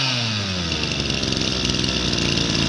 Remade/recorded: recorded